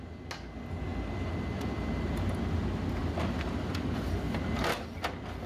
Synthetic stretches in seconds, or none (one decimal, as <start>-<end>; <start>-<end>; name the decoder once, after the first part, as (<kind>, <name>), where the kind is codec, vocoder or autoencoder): none